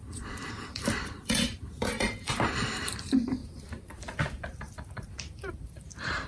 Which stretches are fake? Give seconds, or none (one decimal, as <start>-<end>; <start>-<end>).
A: 0.0-6.3